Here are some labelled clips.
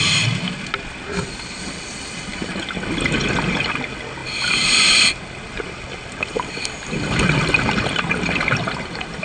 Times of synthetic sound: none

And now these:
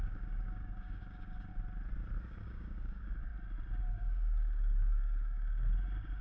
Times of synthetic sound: 0.0-1.5 (codec, DAC); 2.2-3.3; 3.8-6.2

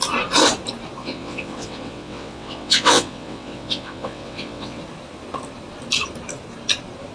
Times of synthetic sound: 1.0-4.8 (vocoder, WaveNeXt)

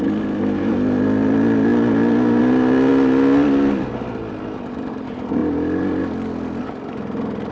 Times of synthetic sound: none

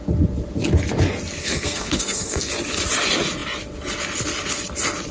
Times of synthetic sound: 1.4-2.5 (codec, SNAC)

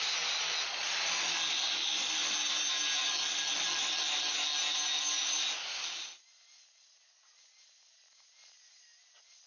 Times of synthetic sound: none

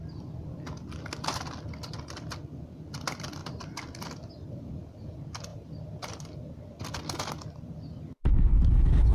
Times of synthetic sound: none